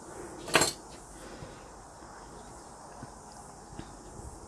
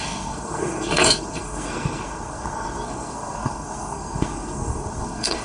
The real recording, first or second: first